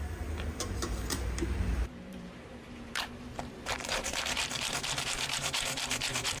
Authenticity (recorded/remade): remade